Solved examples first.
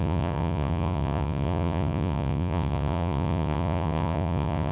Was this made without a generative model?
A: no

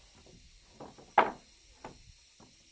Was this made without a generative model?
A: yes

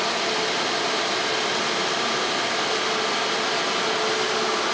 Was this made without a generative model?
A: yes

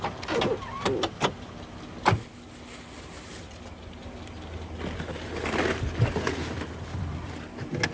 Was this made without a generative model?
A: yes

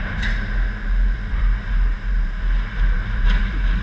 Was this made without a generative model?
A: no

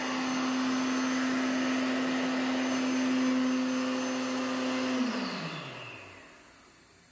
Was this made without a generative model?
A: yes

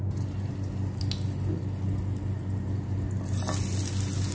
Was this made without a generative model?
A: yes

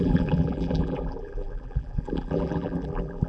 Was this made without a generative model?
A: no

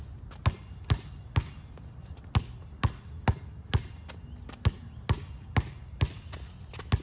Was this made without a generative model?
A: yes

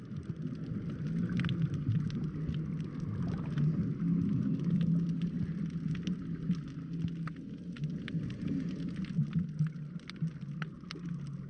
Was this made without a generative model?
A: yes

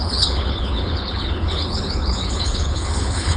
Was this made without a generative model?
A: no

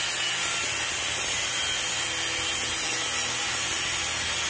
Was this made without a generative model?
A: yes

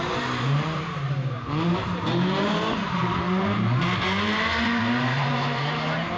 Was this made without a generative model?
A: no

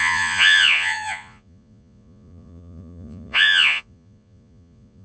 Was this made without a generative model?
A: no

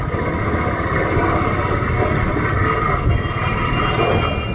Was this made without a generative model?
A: yes